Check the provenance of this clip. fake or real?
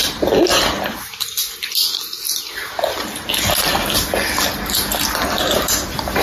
real